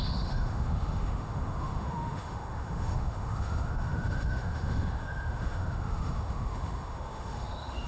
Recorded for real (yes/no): no